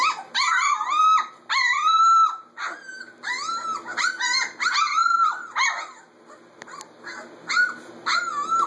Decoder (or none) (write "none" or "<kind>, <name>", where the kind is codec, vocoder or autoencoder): none